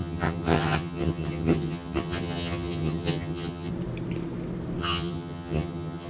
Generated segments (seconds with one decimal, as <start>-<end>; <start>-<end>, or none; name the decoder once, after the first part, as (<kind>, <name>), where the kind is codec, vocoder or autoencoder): 0.0-3.7 (vocoder, HiFi-GAN); 4.8-6.1